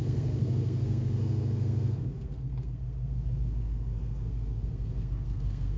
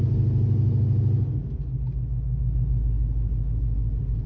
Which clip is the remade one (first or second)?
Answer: first